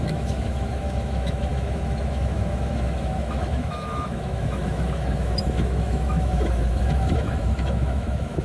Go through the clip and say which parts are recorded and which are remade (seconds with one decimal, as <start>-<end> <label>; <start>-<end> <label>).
0.0-8.4 remade